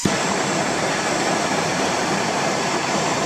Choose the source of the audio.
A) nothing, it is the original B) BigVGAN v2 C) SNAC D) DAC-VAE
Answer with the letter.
B